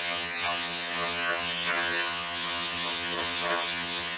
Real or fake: fake